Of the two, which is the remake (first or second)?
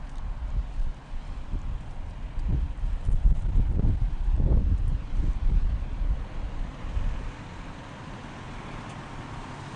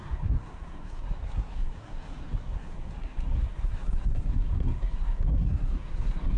second